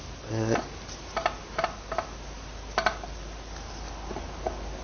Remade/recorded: recorded